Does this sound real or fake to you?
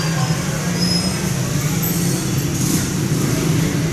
real